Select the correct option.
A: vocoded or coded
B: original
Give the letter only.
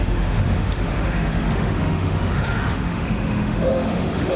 A